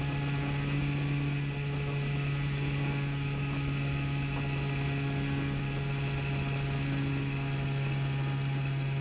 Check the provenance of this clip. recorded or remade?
recorded